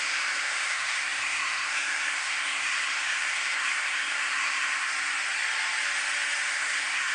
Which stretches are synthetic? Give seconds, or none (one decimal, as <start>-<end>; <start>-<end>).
0.0-4.9; 6.5-7.1